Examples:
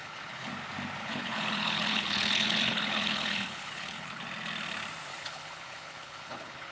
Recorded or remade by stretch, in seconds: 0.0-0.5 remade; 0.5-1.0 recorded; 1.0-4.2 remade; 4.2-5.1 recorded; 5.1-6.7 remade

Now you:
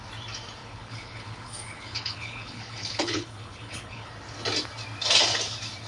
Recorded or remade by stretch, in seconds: 0.0-0.6 recorded; 0.6-4.1 remade; 4.1-5.9 recorded